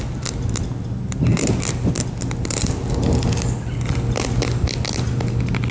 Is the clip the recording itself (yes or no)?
yes